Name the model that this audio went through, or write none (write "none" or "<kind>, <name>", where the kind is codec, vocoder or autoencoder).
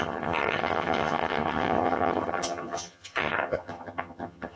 vocoder, HiFi-GAN